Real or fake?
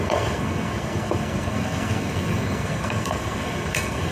fake